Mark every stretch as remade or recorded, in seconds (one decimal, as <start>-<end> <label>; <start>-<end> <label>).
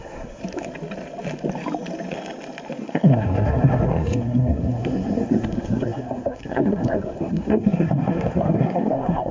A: 0.0-0.4 remade; 0.4-2.8 recorded; 2.8-9.3 remade